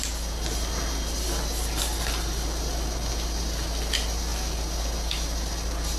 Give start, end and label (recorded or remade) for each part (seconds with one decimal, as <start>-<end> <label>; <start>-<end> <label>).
0.0-6.0 recorded